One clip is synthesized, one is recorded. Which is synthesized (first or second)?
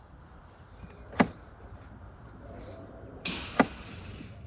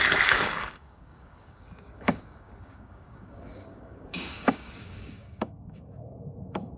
second